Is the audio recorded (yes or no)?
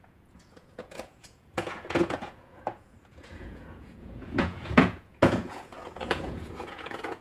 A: no